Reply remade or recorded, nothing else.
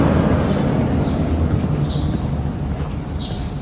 recorded